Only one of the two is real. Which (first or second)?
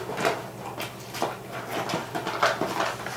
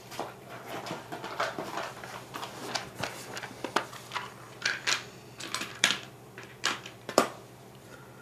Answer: first